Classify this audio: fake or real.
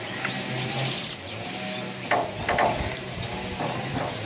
real